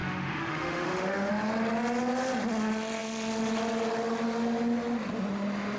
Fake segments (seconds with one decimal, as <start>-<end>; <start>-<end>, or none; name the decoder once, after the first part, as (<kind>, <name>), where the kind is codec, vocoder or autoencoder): 0.0-1.3 (autoencoder, DAC-VAE)